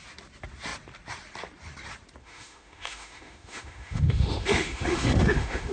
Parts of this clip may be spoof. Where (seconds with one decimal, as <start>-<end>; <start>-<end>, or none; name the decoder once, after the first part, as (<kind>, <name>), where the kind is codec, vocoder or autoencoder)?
2.2-5.7 (autoencoder, DAC-VAE)